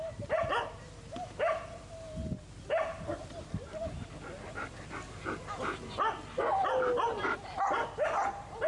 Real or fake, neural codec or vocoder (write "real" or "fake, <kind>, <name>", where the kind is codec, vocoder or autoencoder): real